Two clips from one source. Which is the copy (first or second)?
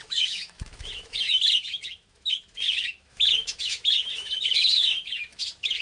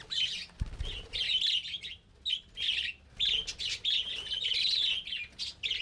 first